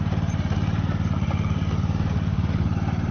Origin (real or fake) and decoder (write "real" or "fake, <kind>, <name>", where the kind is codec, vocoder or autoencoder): fake, vocoder, BigVGAN v2